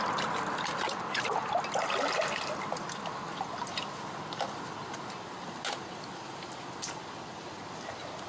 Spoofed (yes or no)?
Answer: no